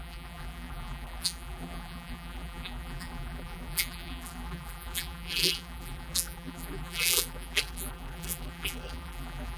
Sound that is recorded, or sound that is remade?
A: remade